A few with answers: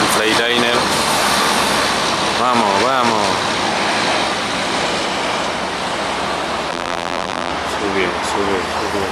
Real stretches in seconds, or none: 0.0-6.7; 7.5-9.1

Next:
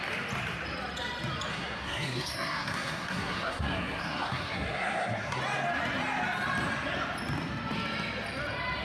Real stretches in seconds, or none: 0.0-1.5; 5.4-8.8

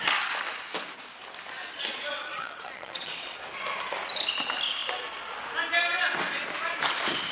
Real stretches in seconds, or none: 0.0-2.3; 3.4-7.3

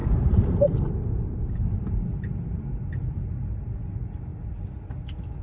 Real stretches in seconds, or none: 0.0-5.4

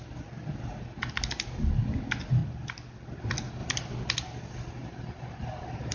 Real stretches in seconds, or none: 0.0-4.8